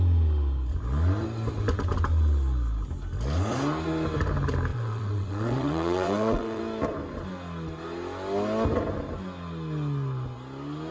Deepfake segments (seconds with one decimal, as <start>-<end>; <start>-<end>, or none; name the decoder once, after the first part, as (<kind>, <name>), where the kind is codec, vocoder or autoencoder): 4.7-6.6 (vocoder, WaveNeXt)